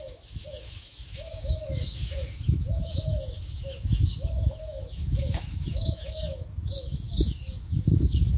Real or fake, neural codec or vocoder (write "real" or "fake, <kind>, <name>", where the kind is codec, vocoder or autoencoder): fake, autoencoder, DAC-VAE